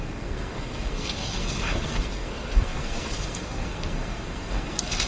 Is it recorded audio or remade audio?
remade